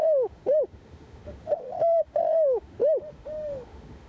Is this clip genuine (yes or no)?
no